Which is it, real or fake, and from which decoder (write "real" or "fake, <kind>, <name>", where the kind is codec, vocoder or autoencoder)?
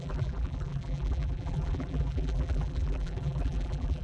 fake, vocoder, BigVGAN v2